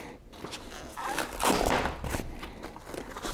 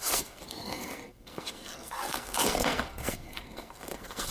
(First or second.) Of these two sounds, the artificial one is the second